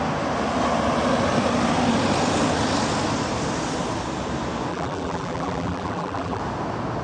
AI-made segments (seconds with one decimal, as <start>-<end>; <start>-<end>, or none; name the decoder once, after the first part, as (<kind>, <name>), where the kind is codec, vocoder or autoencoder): 4.7-6.4 (vocoder, BigVGAN v2)